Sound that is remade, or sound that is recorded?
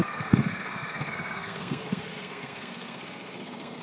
remade